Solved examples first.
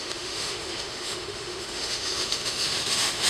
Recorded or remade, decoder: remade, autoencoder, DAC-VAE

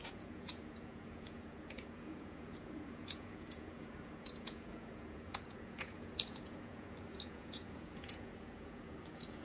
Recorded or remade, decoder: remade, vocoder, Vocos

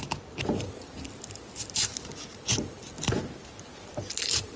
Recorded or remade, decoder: recorded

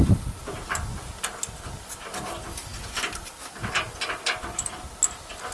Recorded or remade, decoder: recorded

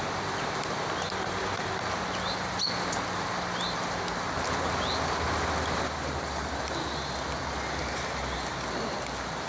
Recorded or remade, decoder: recorded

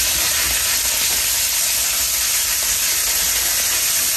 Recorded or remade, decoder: recorded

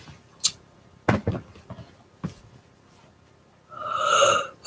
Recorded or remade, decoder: recorded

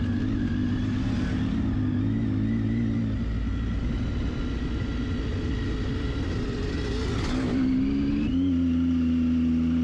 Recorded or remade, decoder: recorded